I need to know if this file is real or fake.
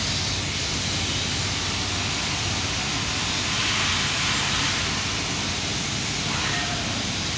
real